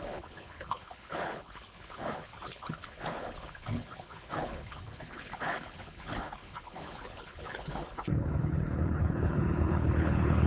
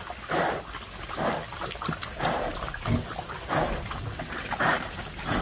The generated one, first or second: first